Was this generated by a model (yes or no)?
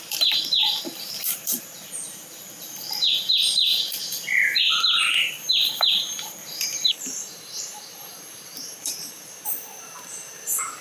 yes